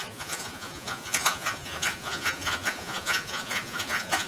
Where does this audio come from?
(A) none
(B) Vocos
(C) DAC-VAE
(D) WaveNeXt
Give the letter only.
B